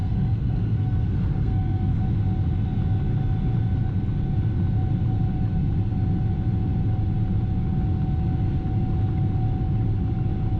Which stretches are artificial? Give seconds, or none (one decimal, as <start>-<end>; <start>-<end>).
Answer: 0.0-2.0